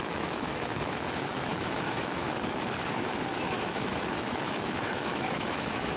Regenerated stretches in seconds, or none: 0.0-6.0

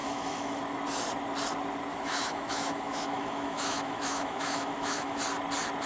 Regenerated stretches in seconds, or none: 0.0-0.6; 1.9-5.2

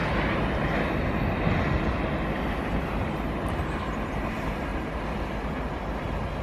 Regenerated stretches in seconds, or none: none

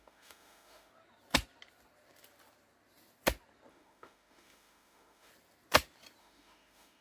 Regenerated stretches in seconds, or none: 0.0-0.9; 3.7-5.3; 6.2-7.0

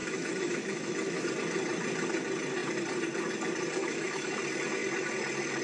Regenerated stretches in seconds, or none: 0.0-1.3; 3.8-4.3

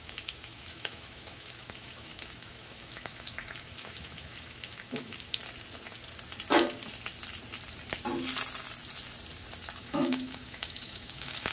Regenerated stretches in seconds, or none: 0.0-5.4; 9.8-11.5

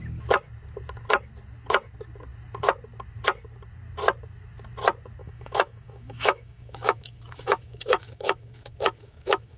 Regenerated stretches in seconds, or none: 5.2-9.6

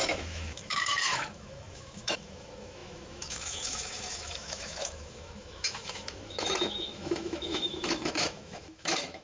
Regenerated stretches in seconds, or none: 0.0-9.2